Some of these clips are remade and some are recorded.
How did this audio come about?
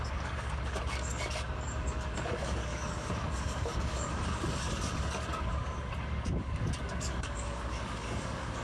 remade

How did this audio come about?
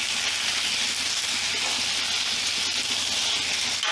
recorded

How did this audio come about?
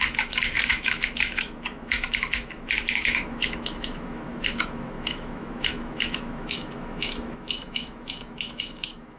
remade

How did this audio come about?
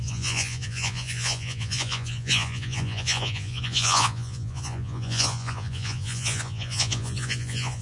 remade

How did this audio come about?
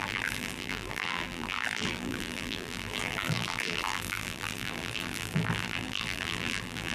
remade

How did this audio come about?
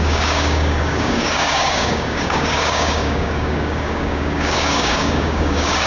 remade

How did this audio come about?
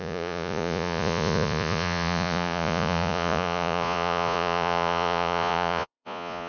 remade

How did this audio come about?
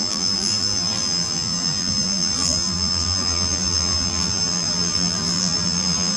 remade